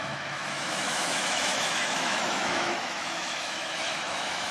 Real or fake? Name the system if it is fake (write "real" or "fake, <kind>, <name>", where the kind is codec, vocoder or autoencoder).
fake, autoencoder, DAC-VAE